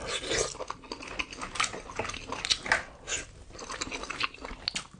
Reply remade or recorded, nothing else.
recorded